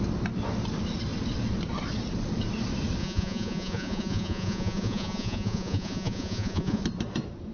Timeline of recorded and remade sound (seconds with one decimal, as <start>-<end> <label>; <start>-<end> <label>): 0.0-3.0 recorded; 3.0-6.8 remade; 6.8-7.5 recorded